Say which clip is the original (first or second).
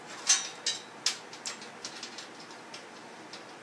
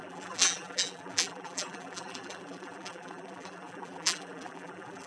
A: first